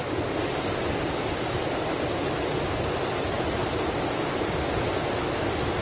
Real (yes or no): yes